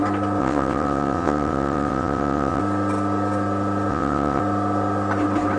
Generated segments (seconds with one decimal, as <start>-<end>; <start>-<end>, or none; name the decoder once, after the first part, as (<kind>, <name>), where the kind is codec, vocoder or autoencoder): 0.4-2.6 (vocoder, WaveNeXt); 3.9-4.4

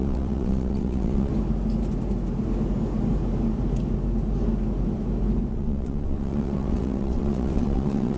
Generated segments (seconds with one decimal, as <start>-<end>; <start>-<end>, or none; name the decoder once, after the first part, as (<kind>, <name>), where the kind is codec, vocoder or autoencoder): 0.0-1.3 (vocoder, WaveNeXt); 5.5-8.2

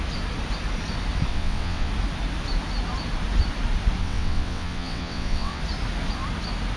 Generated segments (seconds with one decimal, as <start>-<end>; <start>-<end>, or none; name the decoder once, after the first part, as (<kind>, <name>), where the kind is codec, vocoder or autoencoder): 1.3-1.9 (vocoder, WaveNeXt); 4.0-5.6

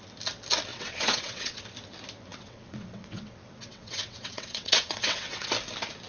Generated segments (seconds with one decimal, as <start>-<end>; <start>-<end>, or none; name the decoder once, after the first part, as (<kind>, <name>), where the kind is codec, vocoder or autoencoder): 0.7-1.6 (vocoder, WaveNeXt); 2.3-5.5

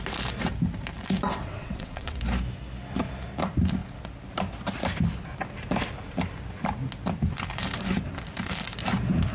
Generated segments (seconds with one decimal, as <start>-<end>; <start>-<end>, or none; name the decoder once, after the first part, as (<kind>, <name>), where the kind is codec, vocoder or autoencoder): 1.3-2.2 (vocoder, WaveNeXt)

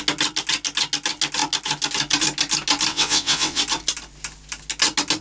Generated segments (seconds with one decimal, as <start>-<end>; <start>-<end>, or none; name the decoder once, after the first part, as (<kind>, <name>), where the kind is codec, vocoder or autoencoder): 2.9-3.6 (vocoder, WaveNeXt)

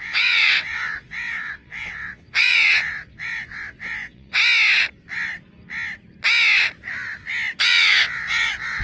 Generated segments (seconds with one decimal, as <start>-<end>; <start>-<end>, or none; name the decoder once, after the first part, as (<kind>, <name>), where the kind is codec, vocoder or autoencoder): 0.0-4.4 (vocoder, WaveNeXt); 7.6-8.8

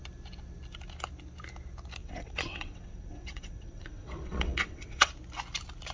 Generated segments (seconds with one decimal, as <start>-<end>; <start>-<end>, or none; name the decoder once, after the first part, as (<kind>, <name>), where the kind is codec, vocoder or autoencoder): 2.0-5.1 (vocoder, WaveNeXt)